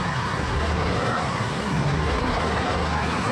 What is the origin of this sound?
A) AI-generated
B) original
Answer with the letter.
A